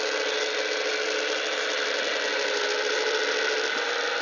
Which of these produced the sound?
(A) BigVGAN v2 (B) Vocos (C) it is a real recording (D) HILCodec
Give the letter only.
C